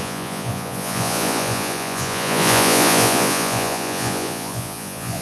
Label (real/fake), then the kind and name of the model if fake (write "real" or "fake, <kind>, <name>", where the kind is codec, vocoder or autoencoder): fake, vocoder, Vocos